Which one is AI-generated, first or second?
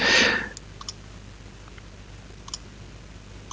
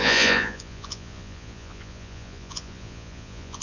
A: second